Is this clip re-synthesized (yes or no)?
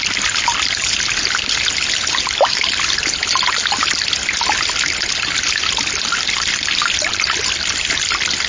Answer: no